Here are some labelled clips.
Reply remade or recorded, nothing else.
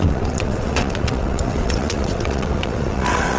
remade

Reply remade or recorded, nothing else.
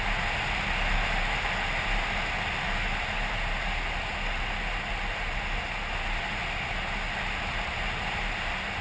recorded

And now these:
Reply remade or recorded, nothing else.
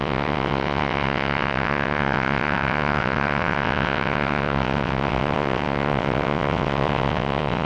remade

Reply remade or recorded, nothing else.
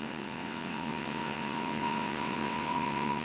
remade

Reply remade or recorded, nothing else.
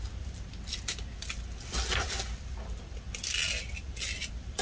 recorded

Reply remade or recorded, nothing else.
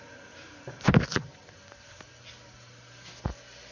recorded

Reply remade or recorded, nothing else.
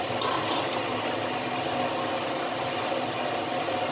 recorded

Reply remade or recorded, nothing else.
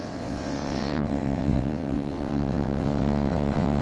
remade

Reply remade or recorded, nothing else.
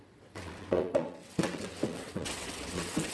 remade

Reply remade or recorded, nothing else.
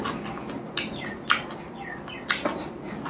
recorded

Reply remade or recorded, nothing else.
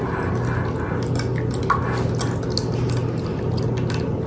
recorded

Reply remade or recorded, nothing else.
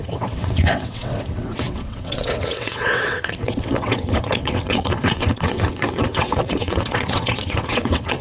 remade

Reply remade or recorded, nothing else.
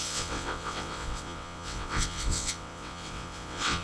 remade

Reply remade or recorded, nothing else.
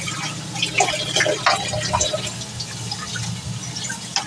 recorded